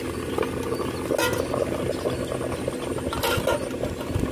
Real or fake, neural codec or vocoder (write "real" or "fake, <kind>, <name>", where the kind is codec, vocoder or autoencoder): real